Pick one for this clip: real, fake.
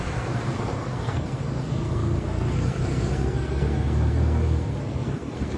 fake